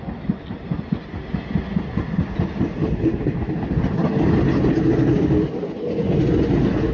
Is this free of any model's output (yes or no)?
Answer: yes